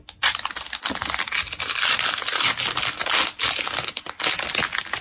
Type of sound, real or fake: real